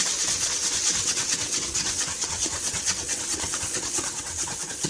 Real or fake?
fake